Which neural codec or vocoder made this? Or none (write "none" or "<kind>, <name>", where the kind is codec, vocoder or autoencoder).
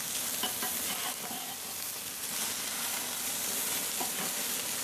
none